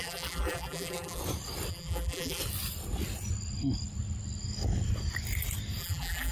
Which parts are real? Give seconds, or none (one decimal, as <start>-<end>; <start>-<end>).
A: 1.2-1.7; 2.4-5.8